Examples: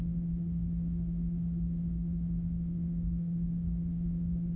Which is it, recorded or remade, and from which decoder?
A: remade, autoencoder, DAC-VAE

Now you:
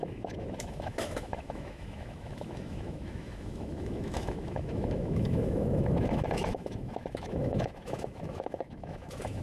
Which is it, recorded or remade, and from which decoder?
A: remade, autoencoder, DAC-VAE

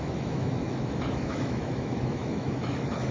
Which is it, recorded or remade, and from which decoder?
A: remade, autoencoder, DAC-VAE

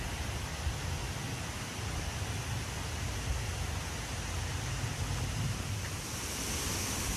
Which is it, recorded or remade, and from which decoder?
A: recorded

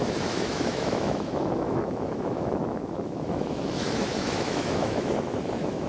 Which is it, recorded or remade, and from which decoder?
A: remade, autoencoder, DAC-VAE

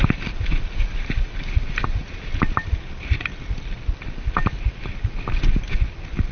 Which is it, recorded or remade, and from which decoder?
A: recorded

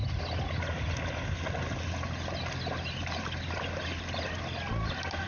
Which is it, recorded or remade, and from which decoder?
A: recorded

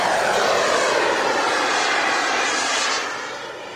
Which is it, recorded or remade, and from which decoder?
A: recorded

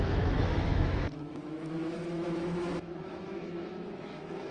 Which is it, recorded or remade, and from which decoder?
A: remade, autoencoder, DAC-VAE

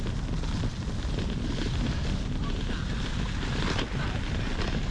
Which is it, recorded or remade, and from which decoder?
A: recorded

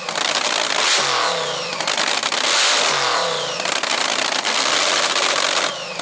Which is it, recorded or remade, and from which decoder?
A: recorded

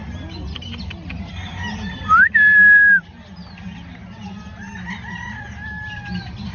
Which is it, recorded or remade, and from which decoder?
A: recorded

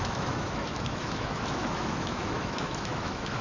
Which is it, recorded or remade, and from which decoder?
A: remade, autoencoder, DAC-VAE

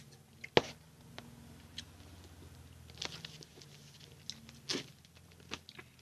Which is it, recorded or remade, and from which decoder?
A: recorded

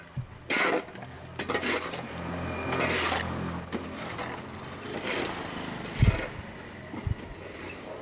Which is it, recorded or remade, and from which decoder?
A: recorded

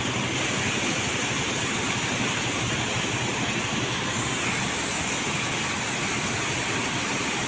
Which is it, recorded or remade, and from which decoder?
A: recorded